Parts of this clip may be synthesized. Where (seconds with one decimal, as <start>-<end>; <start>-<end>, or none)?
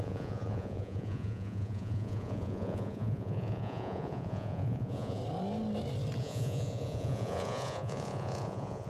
0.0-5.2; 6.2-8.9